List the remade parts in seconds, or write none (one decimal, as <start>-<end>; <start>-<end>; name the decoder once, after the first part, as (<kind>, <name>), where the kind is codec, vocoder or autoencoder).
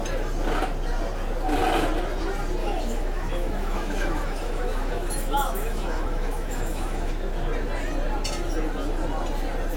2.6-7.1 (autoencoder, DAC-VAE)